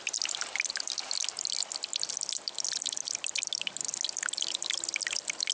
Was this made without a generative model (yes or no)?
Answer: yes